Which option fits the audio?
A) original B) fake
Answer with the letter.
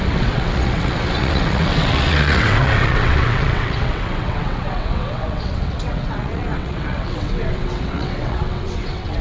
B